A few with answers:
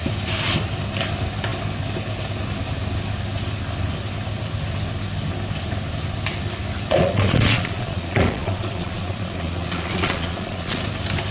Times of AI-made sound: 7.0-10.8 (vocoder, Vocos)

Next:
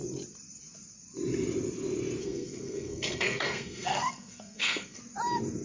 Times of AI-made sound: 2.2-5.0 (codec, SNAC)

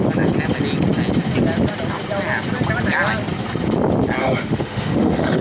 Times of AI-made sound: 4.2-5.4 (autoencoder, DAC-VAE)

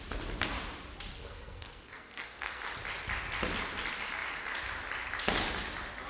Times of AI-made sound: 1.1-2.6 (codec, SNAC)

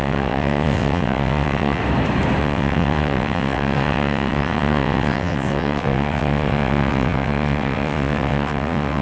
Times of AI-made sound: 0.0-1.8 (vocoder, WaveNeXt); 2.4-9.0

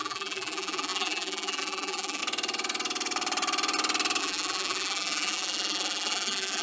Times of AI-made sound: 0.0-2.2 (vocoder, BigVGAN v2); 4.2-6.6

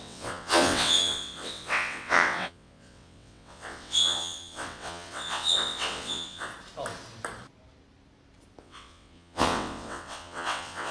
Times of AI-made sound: 0.0-6.5 (vocoder, WaveNeXt); 8.6-10.9

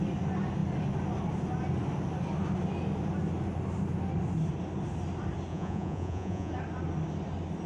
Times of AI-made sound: 5.5-6.5 (vocoder, Vocos)